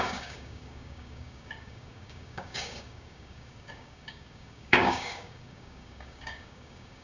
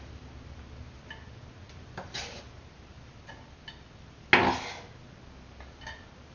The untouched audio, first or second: second